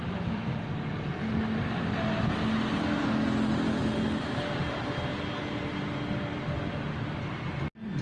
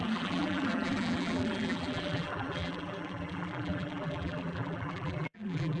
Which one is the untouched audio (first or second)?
first